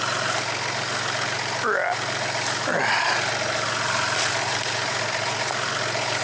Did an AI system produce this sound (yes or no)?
no